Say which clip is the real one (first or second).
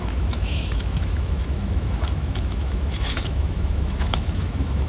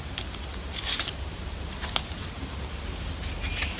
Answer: second